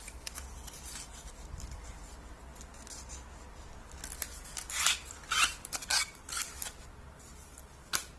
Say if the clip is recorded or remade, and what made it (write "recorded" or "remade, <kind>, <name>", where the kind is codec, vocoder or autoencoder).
recorded